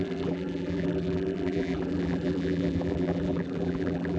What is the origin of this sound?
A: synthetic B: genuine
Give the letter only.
A